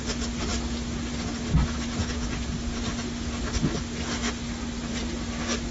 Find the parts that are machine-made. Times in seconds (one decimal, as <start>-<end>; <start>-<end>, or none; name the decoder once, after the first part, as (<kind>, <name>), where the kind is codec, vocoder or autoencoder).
2.0-2.6 (vocoder, Vocos)